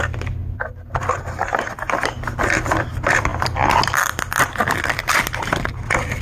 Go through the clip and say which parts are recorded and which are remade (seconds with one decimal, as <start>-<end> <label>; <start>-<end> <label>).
0.0-3.3 remade; 3.3-3.8 recorded; 3.8-4.6 remade; 4.6-5.1 recorded; 5.1-6.2 remade